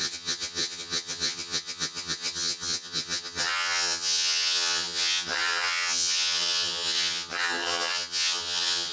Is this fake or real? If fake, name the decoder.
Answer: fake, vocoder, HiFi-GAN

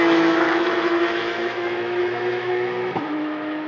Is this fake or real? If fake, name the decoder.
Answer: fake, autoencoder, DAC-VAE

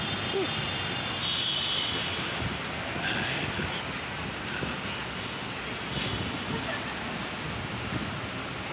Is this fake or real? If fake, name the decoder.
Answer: real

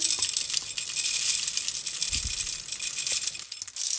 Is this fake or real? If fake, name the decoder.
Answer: real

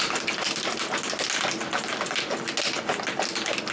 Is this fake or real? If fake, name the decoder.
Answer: real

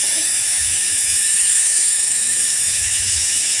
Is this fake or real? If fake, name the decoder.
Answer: fake, autoencoder, DAC-VAE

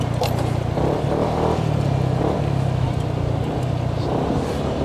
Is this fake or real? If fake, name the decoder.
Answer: real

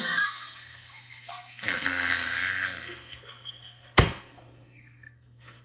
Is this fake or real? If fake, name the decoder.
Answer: fake, codec, SNAC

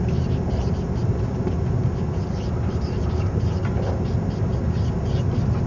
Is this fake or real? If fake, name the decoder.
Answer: real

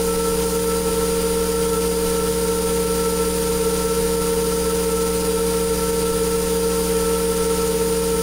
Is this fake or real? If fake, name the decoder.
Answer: real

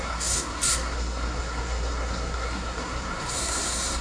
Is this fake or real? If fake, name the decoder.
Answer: fake, codec, SNAC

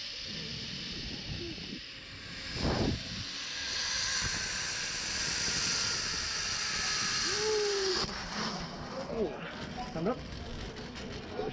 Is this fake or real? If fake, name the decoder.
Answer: real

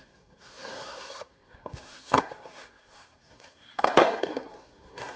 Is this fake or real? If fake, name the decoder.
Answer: fake, codec, SNAC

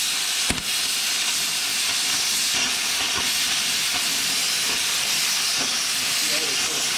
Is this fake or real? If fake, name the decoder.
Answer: real